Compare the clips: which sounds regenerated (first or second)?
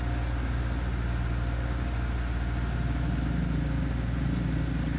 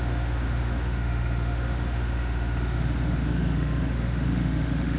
second